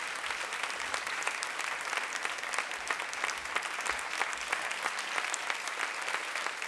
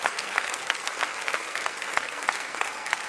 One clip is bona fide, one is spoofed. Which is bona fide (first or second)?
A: first